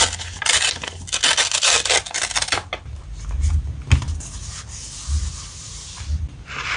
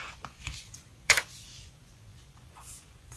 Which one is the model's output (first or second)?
second